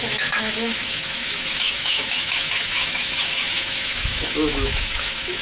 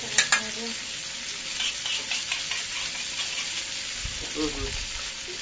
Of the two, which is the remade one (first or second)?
first